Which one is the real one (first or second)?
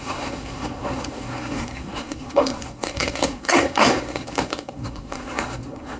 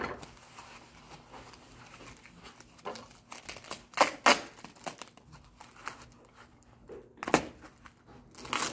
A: second